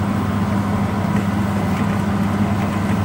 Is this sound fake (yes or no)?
no